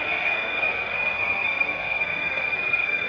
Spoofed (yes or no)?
yes